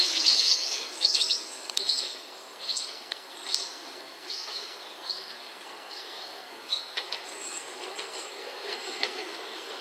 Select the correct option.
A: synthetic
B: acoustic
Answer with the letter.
A